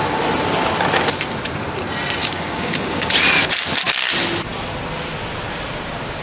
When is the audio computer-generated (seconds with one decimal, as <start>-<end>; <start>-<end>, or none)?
2.2-3.1